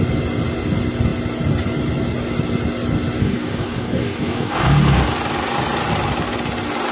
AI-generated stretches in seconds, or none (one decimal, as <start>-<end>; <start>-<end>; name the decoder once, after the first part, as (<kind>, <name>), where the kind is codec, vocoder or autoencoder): 3.2-5.0 (codec, DAC)